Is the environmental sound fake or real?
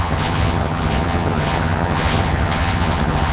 fake